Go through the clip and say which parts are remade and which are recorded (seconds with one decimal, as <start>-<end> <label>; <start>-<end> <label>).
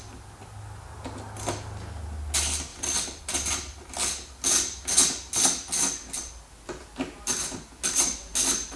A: 0.0-2.7 recorded; 2.7-3.2 remade; 3.2-8.8 recorded